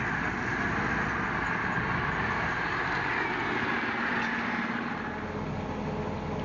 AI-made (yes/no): no